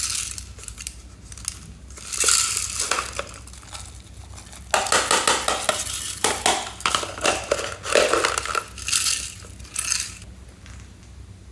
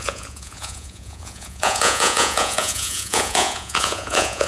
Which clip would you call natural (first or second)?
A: first